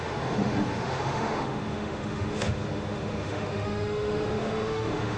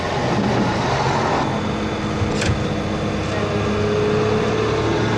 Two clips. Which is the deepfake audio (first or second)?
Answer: first